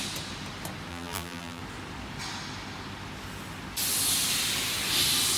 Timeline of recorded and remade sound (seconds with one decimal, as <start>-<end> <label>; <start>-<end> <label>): 0.0-0.9 recorded; 0.9-1.6 remade; 1.6-5.4 recorded